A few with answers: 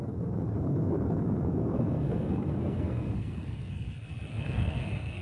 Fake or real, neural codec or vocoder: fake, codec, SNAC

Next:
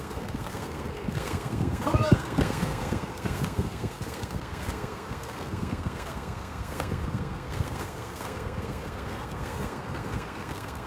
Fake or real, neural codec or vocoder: fake, codec, SNAC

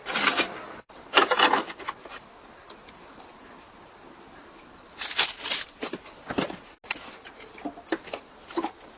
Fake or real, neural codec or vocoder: real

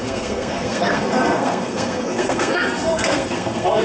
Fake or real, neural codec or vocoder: fake, codec, SNAC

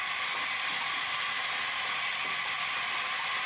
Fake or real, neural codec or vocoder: real